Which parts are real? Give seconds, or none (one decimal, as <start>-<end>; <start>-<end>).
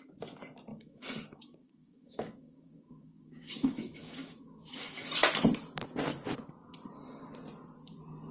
0.0-0.7; 5.1-8.3